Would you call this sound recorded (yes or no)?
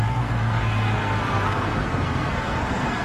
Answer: no